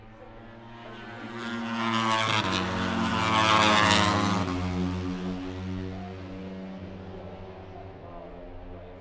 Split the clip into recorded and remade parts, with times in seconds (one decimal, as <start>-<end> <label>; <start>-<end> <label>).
0.0-9.0 recorded